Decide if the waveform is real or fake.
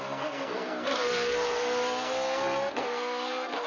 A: fake